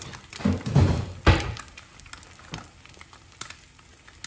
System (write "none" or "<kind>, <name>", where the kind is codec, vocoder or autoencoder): none